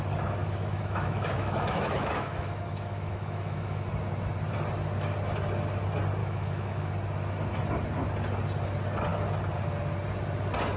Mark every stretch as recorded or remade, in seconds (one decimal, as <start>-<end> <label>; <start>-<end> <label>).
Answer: 0.0-0.4 recorded; 0.4-3.8 remade; 3.8-6.2 recorded; 6.2-6.9 remade; 6.9-10.8 recorded